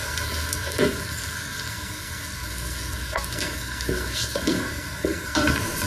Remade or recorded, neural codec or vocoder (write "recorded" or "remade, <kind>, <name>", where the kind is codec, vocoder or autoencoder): remade, codec, SNAC